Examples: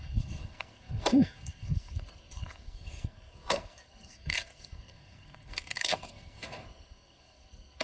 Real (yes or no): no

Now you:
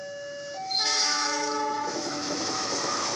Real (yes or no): no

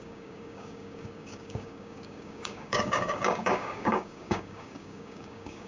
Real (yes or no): no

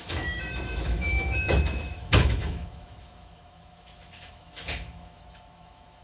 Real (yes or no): no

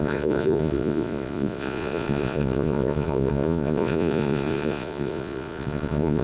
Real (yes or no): no